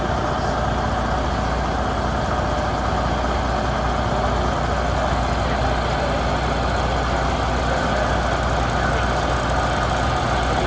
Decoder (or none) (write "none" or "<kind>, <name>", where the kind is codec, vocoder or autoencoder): none